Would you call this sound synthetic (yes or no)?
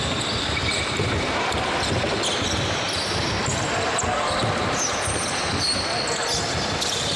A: no